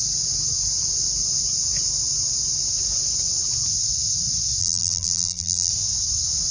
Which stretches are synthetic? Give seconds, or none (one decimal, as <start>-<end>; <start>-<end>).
4.6-5.7